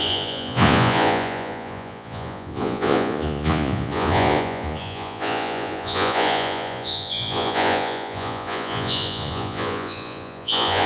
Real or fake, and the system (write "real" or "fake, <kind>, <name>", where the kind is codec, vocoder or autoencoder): fake, vocoder, Vocos